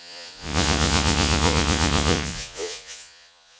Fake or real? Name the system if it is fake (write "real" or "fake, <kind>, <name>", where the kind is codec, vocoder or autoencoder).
fake, vocoder, Vocos